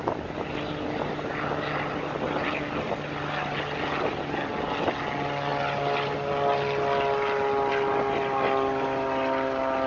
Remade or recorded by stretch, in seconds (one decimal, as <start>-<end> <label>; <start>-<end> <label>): 0.0-9.9 recorded